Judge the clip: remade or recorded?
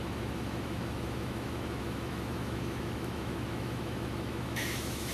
remade